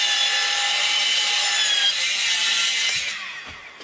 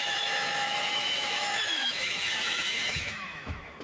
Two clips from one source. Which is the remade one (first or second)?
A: second